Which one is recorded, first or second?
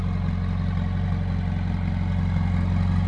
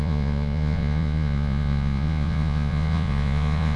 first